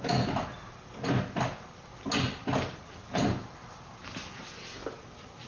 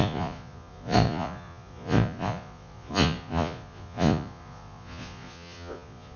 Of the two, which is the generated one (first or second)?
second